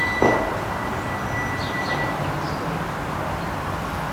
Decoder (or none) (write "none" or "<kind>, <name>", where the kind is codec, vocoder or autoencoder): none